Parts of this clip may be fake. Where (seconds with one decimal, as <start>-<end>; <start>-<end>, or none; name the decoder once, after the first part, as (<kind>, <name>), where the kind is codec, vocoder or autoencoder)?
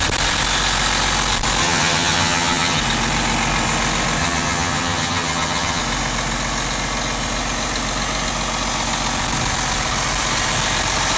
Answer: 1.6-2.8 (vocoder, HiFi-GAN); 4.2-5.8